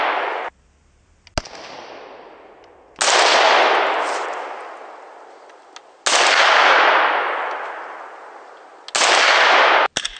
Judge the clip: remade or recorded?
recorded